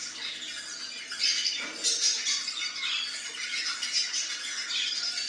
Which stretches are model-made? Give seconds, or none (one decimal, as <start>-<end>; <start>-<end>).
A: none